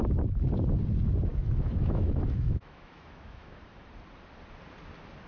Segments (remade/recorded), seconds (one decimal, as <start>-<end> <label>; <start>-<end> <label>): 0.0-1.3 recorded; 1.3-3.9 remade; 3.9-5.3 recorded